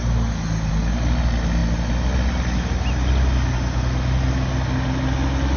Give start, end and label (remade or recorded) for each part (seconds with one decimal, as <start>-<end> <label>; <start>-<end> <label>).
0.0-5.6 recorded